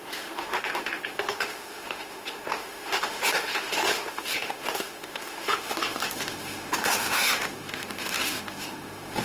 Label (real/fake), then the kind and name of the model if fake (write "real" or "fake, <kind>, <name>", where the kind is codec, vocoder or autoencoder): fake, autoencoder, DAC-VAE